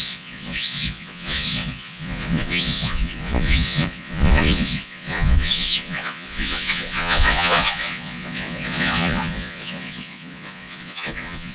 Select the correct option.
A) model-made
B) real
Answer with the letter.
A